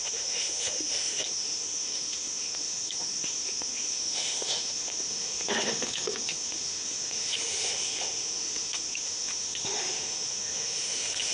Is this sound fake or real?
fake